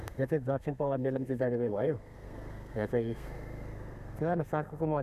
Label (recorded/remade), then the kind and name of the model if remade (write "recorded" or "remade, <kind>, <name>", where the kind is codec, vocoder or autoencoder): remade, codec, SNAC